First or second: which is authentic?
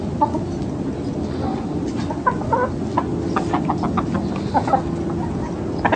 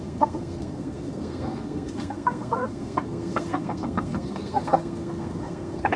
first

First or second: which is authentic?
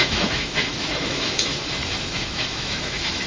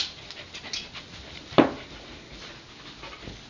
second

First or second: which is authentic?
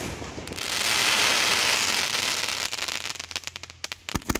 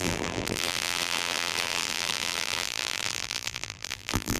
first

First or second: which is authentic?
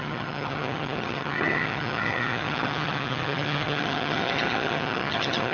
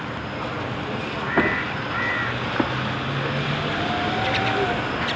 second